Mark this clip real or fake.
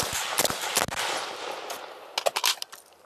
real